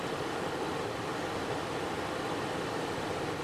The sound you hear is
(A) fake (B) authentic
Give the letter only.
B